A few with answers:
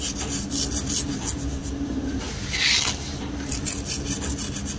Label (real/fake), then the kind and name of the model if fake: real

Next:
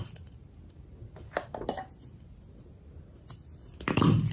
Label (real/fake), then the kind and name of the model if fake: real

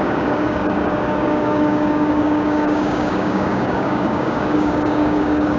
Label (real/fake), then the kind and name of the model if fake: fake, codec, DAC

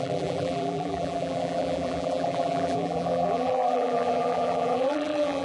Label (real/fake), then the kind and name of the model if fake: fake, vocoder, BigVGAN v2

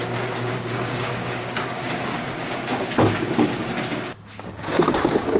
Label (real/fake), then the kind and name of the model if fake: fake, codec, DAC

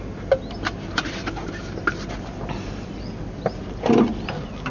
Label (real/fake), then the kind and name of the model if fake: real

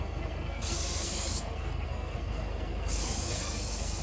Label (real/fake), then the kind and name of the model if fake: fake, codec, SNAC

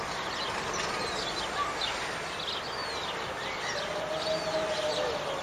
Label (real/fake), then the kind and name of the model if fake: real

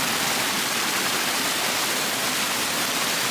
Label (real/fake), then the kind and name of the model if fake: real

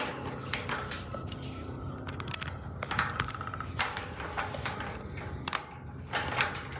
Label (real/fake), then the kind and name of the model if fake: real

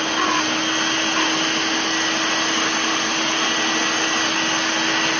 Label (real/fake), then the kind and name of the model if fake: real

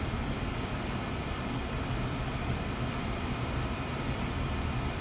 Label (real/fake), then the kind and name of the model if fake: fake, vocoder, BigVGAN v2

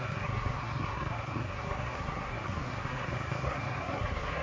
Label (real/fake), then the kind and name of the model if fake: fake, codec, SNAC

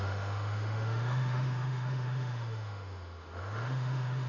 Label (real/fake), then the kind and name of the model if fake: fake, autoencoder, DAC-VAE